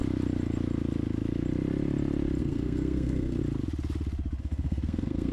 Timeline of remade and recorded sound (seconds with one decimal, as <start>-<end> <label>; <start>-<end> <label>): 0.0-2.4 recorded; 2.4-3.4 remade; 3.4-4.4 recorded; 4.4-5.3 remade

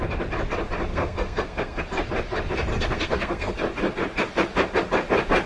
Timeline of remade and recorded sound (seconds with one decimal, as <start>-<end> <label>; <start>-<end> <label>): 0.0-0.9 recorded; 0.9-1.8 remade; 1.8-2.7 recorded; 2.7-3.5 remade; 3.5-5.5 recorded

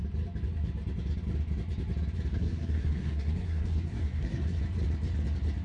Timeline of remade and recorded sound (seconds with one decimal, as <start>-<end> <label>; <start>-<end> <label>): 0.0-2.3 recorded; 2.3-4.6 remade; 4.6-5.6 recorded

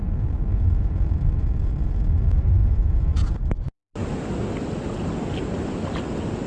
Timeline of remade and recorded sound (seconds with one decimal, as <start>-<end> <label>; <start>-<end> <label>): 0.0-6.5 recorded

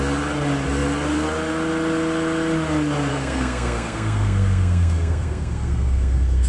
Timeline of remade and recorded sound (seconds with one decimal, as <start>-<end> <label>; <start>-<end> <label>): 0.0-3.1 recorded; 3.1-6.5 remade

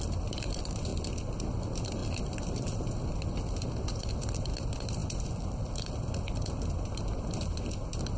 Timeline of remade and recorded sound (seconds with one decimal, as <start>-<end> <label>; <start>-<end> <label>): 0.0-8.2 recorded

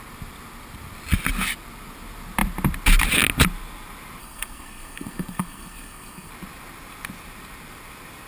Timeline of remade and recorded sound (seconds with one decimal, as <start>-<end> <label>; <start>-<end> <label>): 0.0-4.2 recorded; 4.2-6.3 remade; 6.3-8.3 recorded